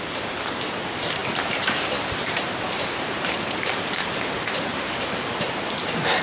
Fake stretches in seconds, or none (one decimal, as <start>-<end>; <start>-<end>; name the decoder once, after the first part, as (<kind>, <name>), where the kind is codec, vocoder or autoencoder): 1.2-4.9 (vocoder, BigVGAN v2)